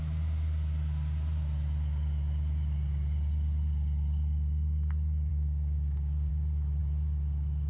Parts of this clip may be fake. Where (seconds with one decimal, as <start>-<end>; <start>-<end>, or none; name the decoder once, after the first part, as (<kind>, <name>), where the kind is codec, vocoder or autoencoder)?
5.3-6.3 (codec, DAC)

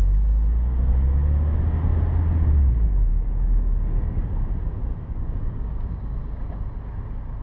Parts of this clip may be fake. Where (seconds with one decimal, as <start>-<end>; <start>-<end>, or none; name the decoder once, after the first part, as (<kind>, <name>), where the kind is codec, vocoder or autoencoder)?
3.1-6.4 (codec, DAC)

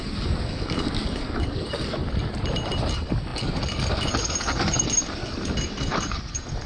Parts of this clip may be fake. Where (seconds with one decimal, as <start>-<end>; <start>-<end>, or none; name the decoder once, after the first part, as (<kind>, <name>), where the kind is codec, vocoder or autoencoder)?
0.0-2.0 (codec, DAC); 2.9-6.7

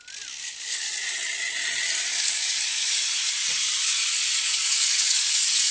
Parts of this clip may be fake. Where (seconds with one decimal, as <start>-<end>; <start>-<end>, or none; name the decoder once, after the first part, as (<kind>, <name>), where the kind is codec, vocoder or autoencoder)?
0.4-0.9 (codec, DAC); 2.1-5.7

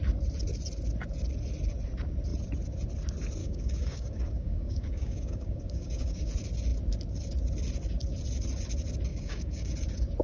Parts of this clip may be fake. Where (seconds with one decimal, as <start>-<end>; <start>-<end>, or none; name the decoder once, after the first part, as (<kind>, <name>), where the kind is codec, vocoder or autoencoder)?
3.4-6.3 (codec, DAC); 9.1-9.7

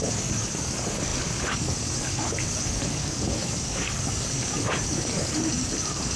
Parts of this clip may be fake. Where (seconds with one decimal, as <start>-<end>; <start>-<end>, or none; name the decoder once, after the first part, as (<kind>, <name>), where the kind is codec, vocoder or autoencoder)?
0.0-6.2 (codec, DAC)